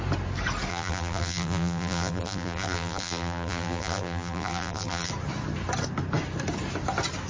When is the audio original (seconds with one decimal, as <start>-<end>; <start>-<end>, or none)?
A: 0.0-0.7; 5.1-7.3